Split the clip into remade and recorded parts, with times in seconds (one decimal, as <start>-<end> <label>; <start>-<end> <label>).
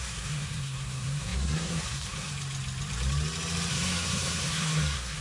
0.0-2.3 remade; 2.3-3.7 recorded; 3.7-5.2 remade